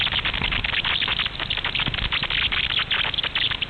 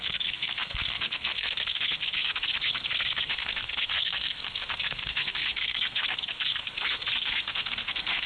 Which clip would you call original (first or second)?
first